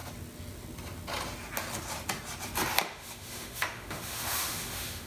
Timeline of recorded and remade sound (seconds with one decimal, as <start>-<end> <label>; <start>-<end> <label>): 0.0-2.8 recorded; 2.8-5.1 remade